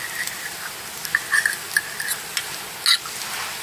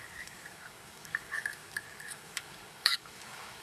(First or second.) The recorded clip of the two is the first